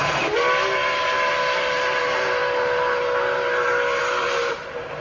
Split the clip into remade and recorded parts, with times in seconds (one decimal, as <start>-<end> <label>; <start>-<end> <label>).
0.0-2.0 recorded; 2.0-2.4 remade; 2.4-4.0 recorded; 4.0-5.0 remade